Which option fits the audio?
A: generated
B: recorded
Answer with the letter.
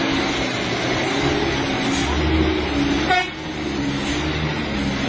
B